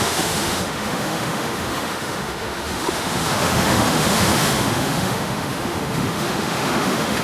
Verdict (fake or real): fake